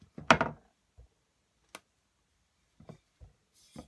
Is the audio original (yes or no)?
yes